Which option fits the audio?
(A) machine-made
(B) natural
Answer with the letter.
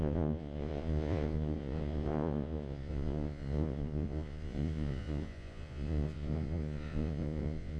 A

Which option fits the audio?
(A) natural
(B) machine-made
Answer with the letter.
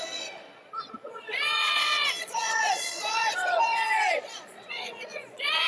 B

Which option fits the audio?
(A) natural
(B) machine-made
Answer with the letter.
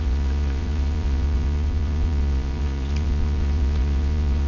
B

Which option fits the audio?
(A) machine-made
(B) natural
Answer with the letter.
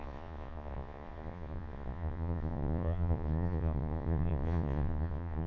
A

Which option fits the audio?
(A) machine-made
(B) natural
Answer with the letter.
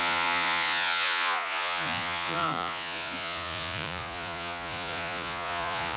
A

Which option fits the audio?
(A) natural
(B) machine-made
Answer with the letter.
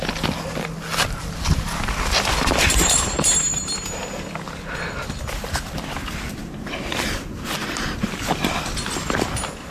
A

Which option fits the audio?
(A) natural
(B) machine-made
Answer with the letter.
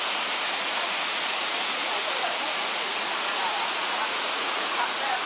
B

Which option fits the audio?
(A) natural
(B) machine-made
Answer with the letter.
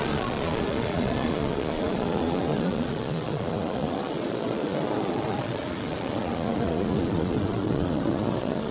B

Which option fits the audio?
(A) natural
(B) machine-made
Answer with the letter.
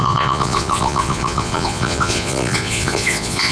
B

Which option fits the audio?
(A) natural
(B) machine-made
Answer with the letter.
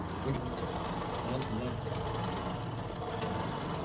A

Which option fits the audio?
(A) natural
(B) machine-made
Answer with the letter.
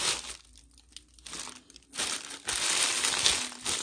A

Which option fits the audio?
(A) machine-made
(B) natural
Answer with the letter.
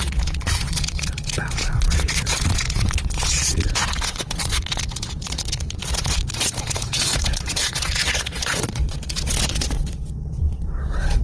A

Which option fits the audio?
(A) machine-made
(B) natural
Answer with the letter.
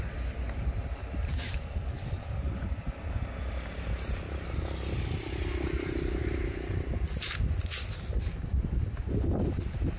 B